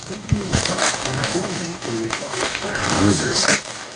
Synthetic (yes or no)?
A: yes